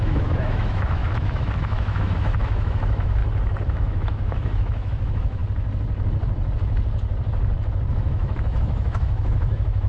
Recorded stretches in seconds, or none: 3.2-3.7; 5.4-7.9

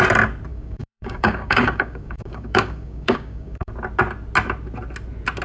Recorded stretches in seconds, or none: 0.0-0.5; 3.7-5.4

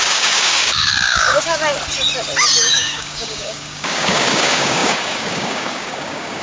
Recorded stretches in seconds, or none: 1.6-2.6

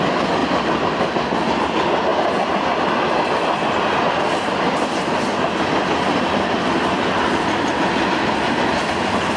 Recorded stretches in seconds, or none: 0.0-9.4

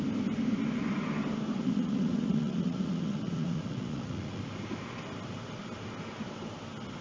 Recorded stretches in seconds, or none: 0.0-1.5; 4.4-7.0

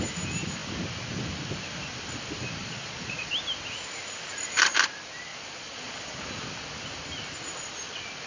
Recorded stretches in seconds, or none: 0.0-2.6; 3.3-5.3; 6.0-8.3

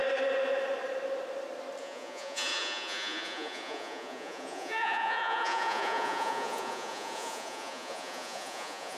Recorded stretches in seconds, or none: 0.0-1.8